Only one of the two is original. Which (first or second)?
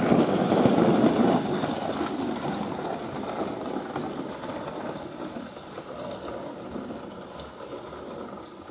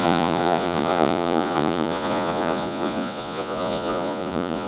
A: first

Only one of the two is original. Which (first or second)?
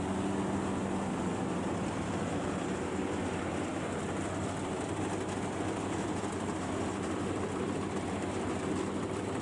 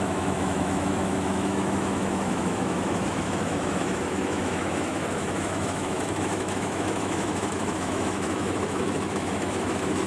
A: first